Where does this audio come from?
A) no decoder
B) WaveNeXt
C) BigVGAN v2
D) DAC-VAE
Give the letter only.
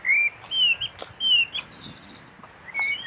A